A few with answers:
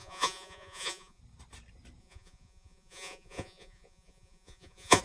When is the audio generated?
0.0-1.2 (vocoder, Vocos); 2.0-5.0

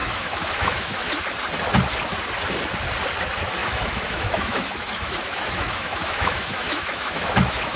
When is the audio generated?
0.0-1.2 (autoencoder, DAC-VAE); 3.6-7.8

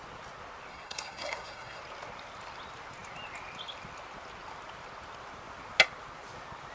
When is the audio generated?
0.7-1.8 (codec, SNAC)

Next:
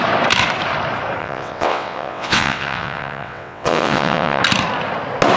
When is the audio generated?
1.2-4.4 (vocoder, WaveNeXt)

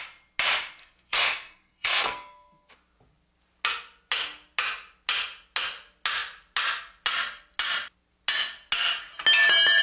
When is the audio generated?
0.8-2.7 (codec, SNAC)

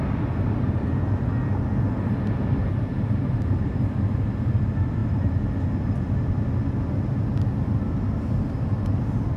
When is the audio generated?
2.6-4.3 (vocoder, BigVGAN v2)

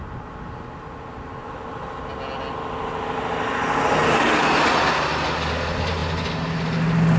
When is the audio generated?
none